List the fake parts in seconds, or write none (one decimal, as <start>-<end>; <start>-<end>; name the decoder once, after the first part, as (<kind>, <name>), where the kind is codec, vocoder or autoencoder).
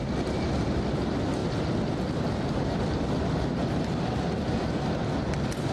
none